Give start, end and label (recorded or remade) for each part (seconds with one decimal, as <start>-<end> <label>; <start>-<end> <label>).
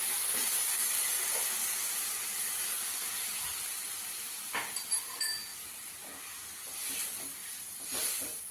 0.0-7.4 recorded; 7.4-8.5 remade